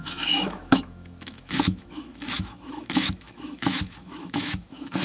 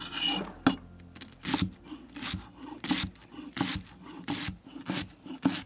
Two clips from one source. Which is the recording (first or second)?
second